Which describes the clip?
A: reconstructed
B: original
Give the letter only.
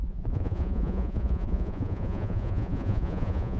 A